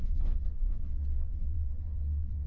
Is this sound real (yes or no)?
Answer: no